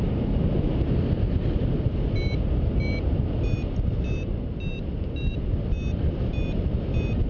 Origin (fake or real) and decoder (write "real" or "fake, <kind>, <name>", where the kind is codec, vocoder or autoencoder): real